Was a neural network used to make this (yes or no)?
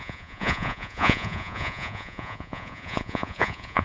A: yes